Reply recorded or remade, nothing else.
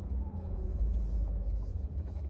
remade